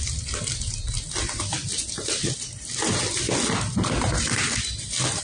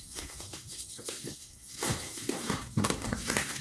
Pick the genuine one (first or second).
first